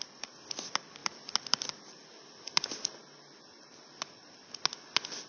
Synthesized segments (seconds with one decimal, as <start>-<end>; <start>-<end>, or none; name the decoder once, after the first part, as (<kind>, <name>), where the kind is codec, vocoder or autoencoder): none